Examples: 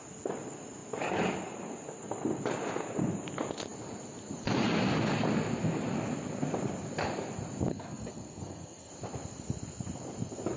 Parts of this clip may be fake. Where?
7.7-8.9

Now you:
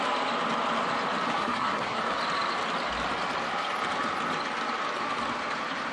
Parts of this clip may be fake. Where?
1.4-2.0

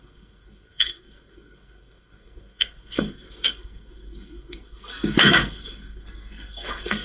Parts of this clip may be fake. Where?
0.0-7.0

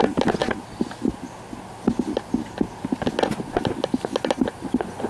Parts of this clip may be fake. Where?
none

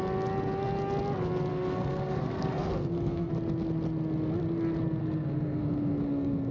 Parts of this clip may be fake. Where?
1.5-3.3; 5.0-6.5